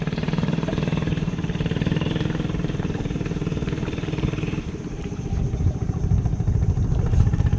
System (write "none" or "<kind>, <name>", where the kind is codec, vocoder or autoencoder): vocoder, BigVGAN v2